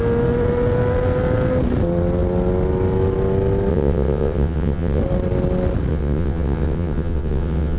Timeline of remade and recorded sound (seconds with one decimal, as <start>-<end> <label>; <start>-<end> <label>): 0.0-3.7 recorded; 3.7-5.0 remade; 5.0-5.9 recorded; 5.9-7.8 remade